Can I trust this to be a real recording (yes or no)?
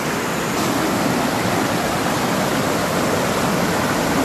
yes